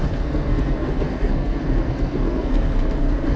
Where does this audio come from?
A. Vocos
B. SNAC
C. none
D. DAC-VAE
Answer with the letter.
B